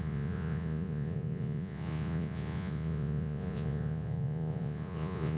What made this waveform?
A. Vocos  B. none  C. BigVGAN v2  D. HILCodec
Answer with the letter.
A